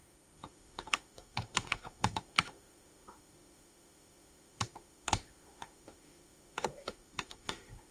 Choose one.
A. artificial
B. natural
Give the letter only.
A